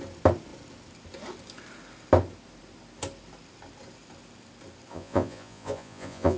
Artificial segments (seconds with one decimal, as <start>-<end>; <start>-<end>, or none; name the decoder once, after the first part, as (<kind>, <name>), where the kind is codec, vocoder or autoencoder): 4.9-6.4 (vocoder, Vocos)